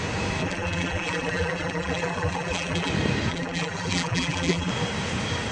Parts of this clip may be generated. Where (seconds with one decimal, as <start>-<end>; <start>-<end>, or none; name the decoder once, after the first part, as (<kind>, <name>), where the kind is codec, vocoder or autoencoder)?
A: 0.4-2.9 (vocoder, BigVGAN v2); 3.3-4.7